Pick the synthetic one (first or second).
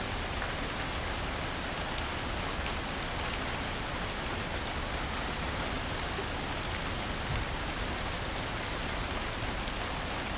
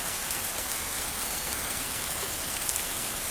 second